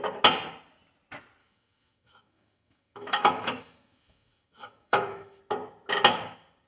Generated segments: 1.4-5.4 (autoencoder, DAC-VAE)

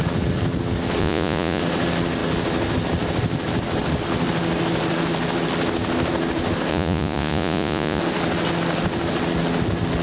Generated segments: 1.0-1.6 (vocoder, Vocos); 6.7-8.0

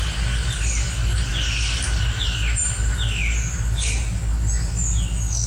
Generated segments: none

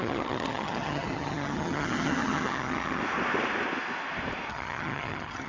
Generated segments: 0.0-3.0 (vocoder, HiFi-GAN); 4.5-5.5

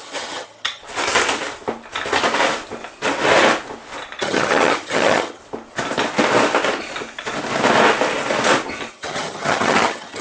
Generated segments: 0.0-0.8 (vocoder, HiFi-GAN); 4.2-5.4; 8.9-10.2

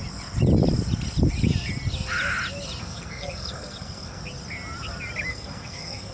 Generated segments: 2.8-4.2 (codec, SNAC); 5.3-6.1

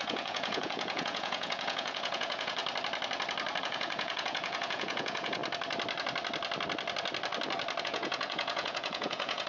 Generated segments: 0.0-2.6 (vocoder, Vocos); 3.6-5.4; 7.8-9.5

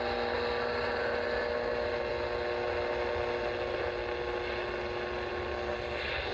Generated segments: none